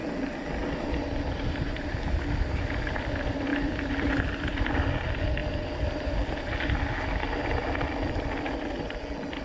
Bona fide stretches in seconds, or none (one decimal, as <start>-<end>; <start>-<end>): 0.0-9.4